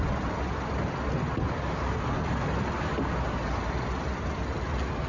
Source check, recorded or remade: recorded